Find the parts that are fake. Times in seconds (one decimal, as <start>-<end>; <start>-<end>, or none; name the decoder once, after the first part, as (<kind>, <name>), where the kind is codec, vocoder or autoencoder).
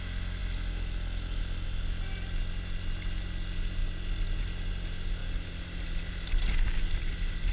none